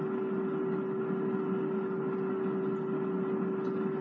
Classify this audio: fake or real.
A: real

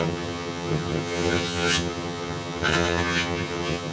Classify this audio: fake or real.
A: fake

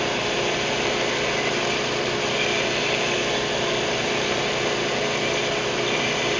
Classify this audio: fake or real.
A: real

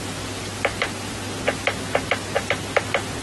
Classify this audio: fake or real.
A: real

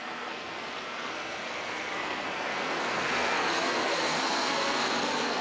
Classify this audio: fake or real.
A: fake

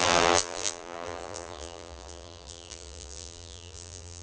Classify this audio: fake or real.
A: fake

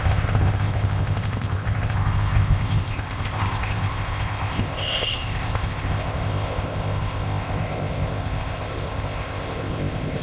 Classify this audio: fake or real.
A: fake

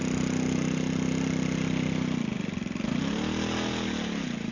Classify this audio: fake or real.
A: real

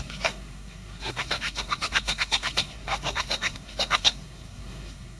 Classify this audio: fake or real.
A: fake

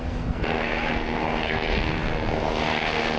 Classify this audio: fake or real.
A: fake